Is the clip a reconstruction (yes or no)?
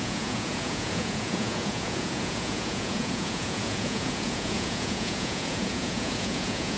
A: yes